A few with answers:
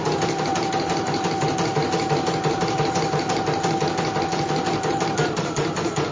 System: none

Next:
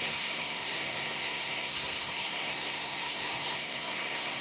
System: codec, SNAC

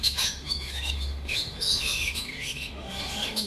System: autoencoder, DAC-VAE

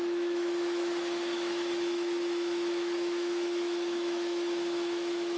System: autoencoder, DAC-VAE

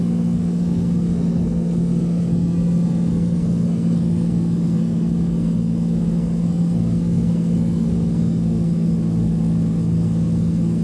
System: codec, SNAC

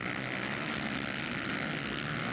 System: none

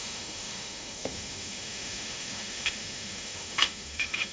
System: autoencoder, DAC-VAE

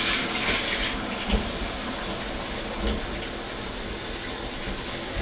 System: none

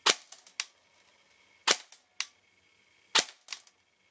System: none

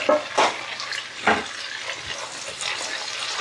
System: none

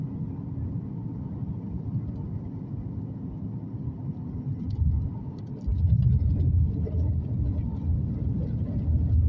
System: none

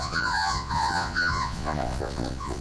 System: vocoder, Vocos